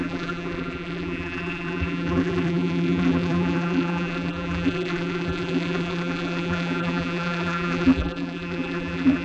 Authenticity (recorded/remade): remade